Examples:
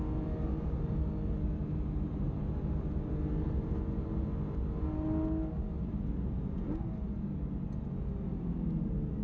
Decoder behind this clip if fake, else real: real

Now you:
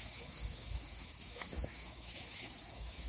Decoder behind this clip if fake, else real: fake, autoencoder, DAC-VAE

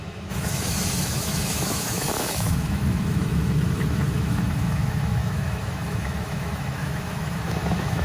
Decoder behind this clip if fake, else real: fake, autoencoder, DAC-VAE